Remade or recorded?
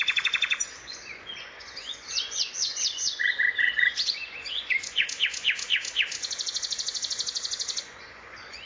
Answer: remade